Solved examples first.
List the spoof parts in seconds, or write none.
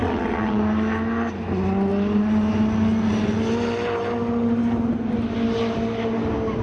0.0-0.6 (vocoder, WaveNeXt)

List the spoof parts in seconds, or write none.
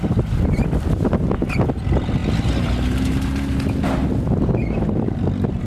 none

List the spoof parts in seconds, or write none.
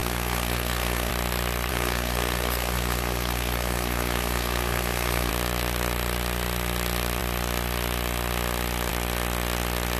0.0-1.1 (codec, SNAC); 1.7-5.3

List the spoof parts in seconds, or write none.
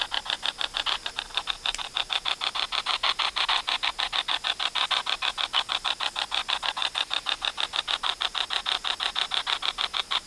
none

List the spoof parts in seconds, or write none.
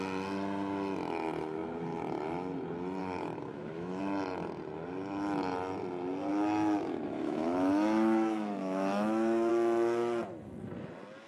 3.0-4.0 (autoencoder, DAC-VAE); 6.3-9.5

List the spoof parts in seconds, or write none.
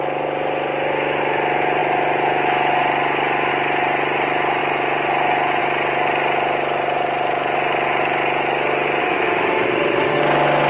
9.0-10.2 (autoencoder, DAC-VAE)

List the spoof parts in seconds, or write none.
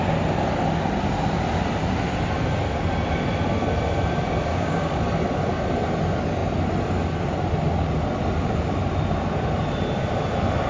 4.5-5.0 (codec, DAC)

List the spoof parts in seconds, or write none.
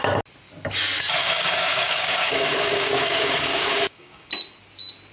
1.2-4.3 (codec, DAC)